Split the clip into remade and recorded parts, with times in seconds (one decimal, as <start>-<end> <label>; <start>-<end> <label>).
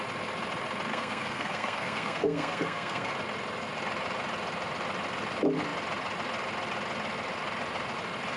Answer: 0.0-0.9 recorded; 0.9-3.1 remade; 3.1-8.4 recorded